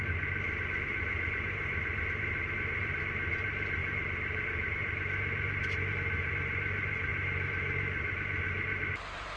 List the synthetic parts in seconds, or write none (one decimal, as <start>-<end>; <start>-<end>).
0.0-9.4